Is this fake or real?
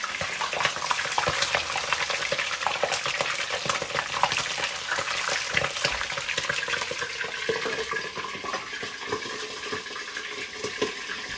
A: real